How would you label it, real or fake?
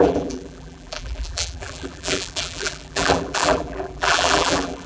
fake